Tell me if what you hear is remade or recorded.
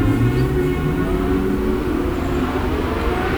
recorded